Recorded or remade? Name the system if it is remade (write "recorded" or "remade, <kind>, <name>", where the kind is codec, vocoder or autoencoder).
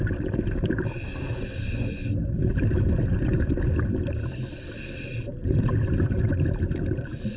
recorded